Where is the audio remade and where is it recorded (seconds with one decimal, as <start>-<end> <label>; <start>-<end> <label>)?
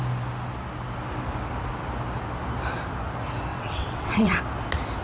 0.0-3.5 recorded; 3.5-4.4 remade; 4.4-5.0 recorded